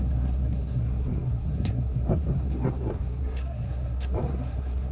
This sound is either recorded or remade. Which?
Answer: remade